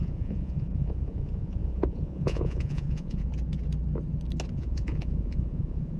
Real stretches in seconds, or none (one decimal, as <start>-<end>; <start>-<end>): 3.3-4.5